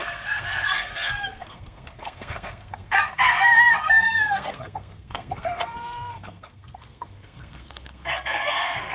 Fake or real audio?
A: fake